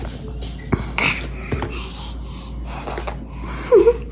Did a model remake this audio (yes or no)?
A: no